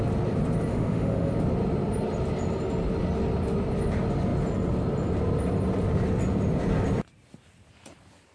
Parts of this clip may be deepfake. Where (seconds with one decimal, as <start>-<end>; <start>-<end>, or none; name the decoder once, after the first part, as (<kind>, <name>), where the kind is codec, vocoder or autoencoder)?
0.7-1.3 (autoencoder, DAC-VAE)